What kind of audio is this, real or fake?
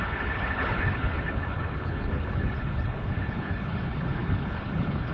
fake